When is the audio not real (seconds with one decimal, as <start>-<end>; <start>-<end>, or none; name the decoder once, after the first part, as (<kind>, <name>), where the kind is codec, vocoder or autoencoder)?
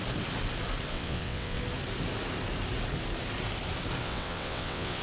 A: 0.9-1.6 (vocoder, WaveNeXt); 4.0-5.0